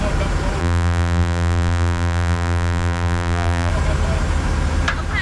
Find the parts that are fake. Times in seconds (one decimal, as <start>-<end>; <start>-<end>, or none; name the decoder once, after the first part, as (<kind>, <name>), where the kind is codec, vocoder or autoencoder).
0.6-3.7 (vocoder, BigVGAN v2)